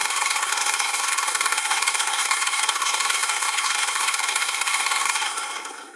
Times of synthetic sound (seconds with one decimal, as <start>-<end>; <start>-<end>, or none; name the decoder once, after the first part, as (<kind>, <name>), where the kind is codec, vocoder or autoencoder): 0.0-6.0 (codec, SNAC)